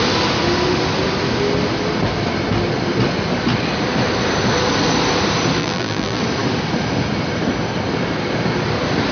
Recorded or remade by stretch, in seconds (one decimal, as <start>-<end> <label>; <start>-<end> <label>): 0.0-5.6 recorded; 5.6-6.2 remade; 6.2-9.1 recorded